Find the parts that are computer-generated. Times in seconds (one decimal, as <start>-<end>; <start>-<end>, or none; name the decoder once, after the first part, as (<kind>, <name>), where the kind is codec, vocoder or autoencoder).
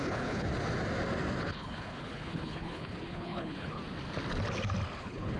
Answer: 0.0-0.5 (codec, HILCodec); 1.4-3.8; 5.0-5.4